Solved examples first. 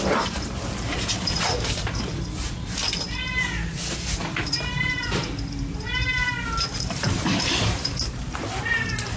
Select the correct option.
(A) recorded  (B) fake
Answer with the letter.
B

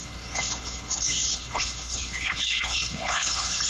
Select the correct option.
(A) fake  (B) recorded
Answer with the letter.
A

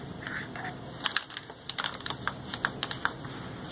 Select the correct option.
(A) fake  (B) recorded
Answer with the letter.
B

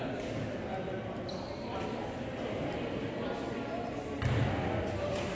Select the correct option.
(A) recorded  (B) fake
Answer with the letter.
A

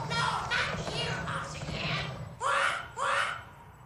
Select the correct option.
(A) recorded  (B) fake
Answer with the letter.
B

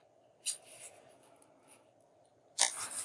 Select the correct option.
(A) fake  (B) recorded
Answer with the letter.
B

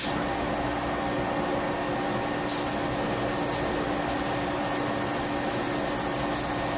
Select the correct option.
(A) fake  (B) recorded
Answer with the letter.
B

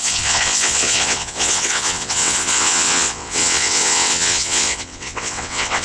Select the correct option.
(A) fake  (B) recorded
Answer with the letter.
A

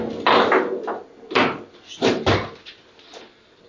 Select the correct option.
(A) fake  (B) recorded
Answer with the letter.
B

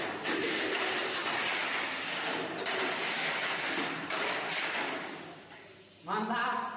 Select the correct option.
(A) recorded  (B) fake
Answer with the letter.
A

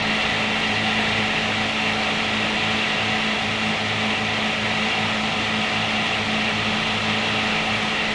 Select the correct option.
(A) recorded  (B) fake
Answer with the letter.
A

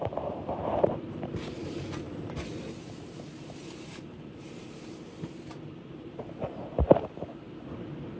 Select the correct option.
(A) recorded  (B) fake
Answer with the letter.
B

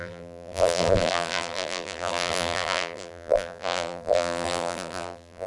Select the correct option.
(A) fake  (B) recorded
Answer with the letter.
A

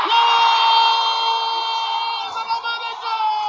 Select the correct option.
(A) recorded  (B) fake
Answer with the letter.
A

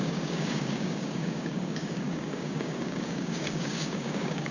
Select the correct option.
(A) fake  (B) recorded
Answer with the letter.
A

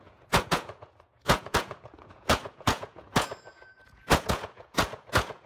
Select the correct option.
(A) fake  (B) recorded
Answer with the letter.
A